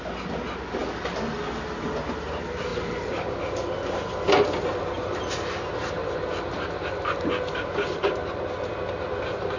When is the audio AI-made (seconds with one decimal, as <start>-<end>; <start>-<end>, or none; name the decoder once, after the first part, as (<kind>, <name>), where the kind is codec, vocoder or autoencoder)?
none